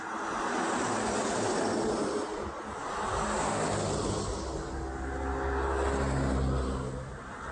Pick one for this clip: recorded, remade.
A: recorded